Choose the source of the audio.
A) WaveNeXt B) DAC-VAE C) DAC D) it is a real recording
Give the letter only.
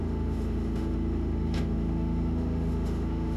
B